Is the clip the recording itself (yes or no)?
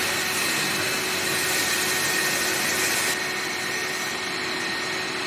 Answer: yes